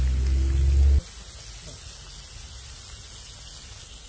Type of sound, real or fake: real